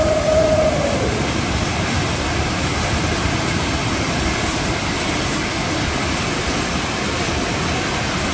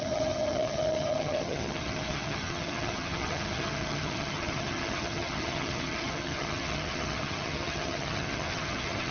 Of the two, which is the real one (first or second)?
first